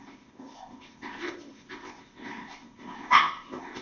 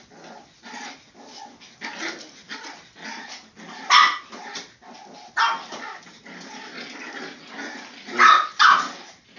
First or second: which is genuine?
second